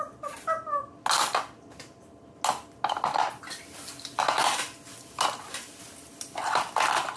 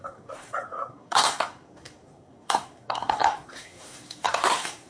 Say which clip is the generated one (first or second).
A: second